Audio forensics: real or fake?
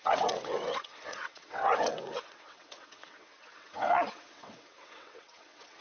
fake